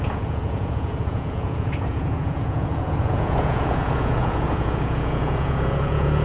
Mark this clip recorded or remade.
remade